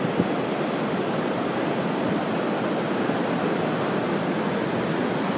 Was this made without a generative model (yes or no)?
yes